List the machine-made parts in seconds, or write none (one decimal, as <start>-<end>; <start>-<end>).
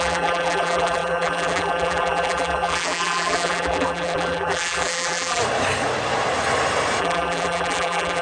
0.0-5.4; 7.0-8.2